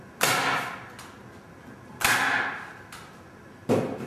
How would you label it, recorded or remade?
recorded